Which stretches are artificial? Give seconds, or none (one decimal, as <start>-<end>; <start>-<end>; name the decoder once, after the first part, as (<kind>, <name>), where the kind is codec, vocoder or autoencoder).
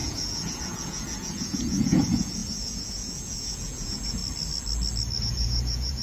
0.0-4.2 (vocoder, Vocos); 5.2-6.0